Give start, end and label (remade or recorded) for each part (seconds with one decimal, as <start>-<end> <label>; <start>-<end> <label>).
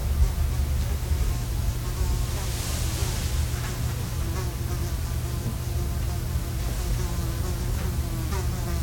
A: 0.0-8.8 recorded